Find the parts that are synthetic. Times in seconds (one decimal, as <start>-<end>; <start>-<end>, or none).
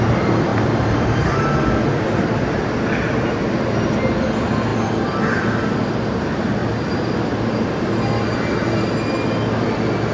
0.5-1.4